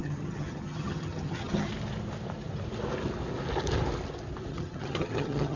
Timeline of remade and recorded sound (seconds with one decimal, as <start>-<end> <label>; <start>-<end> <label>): 0.0-1.7 remade; 1.7-4.5 recorded; 4.5-5.6 remade